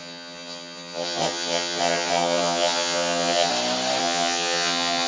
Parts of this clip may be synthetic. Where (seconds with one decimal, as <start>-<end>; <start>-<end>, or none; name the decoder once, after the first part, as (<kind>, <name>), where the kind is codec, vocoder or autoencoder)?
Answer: 0.0-3.5 (vocoder, HiFi-GAN); 4.0-5.1